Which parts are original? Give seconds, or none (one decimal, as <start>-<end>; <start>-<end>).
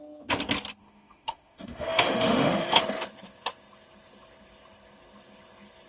0.0-0.8; 2.8-5.9